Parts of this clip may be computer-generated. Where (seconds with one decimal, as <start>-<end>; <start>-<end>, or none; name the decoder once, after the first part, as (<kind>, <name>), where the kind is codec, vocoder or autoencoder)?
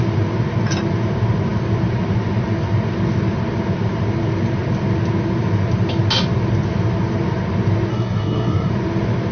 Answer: 7.9-8.7 (codec, SNAC)